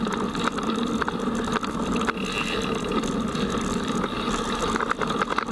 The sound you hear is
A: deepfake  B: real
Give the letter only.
B